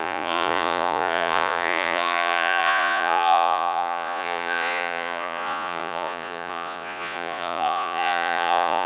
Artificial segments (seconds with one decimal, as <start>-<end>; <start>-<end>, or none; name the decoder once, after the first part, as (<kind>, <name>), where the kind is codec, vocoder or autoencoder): 0.0-8.9 (vocoder, Vocos)